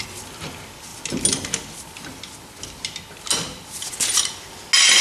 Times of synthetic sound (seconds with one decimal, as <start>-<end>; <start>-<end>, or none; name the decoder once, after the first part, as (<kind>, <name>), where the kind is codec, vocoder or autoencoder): none